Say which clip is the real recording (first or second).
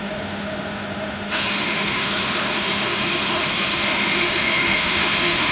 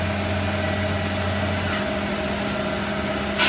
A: second